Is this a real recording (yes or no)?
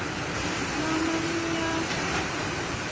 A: yes